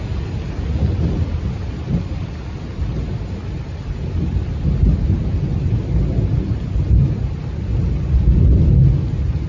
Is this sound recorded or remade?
recorded